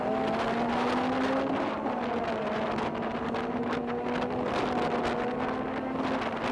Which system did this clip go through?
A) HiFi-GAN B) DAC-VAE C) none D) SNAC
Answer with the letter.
C